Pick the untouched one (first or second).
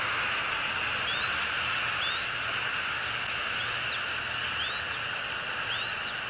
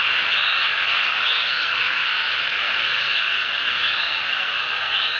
first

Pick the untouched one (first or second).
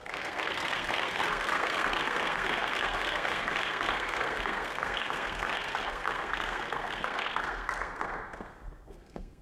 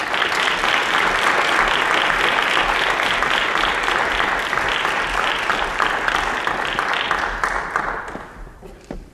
second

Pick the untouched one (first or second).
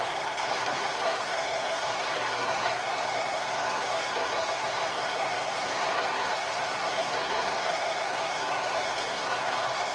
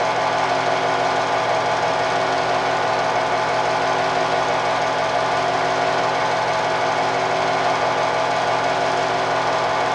second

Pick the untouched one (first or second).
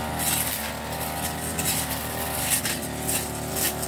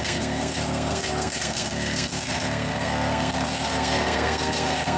first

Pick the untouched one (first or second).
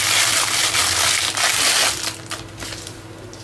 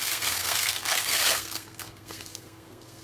first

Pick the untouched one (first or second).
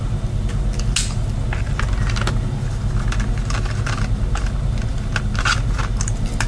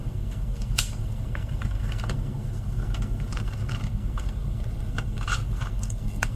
first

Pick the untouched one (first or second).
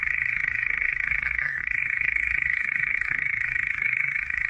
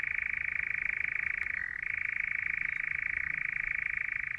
second